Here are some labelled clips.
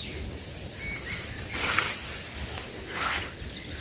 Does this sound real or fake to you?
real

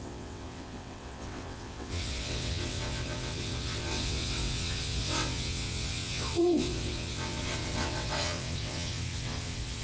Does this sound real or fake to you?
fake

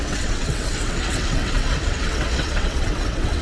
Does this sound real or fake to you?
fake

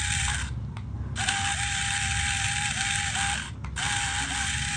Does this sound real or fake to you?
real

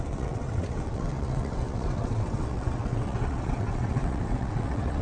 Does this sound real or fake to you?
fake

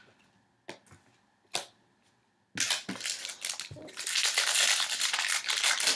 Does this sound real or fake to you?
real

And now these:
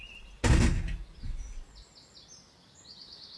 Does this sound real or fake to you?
real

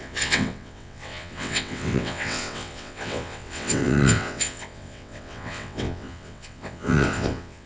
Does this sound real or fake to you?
fake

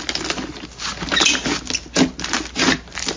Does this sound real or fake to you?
real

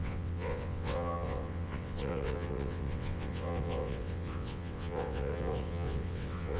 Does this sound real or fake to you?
fake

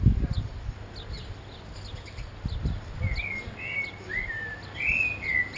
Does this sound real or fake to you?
real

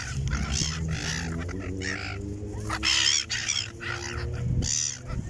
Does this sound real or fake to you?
real